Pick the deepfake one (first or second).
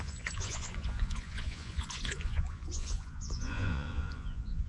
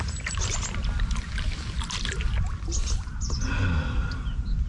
first